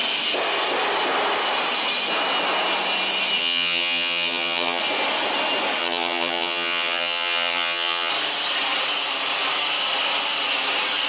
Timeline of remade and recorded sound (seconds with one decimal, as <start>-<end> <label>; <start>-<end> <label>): 0.0-3.4 recorded; 3.4-4.8 remade; 4.8-5.8 recorded; 5.8-8.1 remade; 8.1-11.1 recorded